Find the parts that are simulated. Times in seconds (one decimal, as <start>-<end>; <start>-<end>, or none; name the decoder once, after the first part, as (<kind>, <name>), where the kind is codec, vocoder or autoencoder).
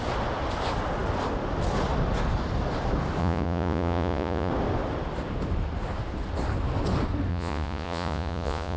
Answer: 3.2-4.5 (vocoder, Vocos); 7.3-8.8